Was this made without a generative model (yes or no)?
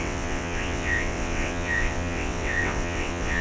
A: no